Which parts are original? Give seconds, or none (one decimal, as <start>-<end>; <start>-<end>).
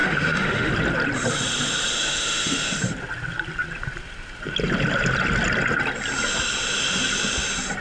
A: 0.7-1.9; 2.8-7.8